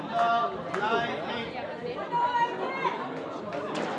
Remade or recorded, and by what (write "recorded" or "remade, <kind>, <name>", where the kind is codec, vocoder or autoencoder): recorded